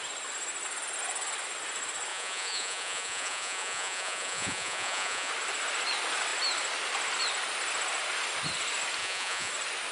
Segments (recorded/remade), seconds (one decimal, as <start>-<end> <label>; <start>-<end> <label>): 0.0-2.1 recorded; 2.1-5.3 remade; 5.3-9.0 recorded; 9.0-9.5 remade; 9.5-9.9 recorded